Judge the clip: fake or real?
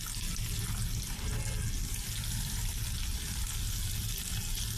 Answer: real